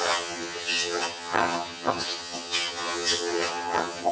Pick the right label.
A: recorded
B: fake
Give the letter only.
B